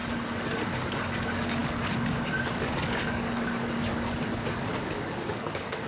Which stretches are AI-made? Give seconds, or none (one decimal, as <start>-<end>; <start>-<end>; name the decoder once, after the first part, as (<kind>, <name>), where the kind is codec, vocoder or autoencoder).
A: 0.9-5.9 (codec, DAC)